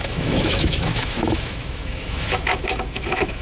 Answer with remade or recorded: remade